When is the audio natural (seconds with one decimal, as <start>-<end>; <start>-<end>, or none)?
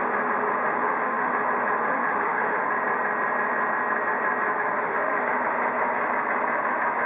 0.0-0.7; 1.3-1.9; 2.7-4.5; 5.2-7.1